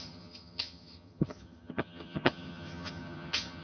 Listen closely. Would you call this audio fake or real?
fake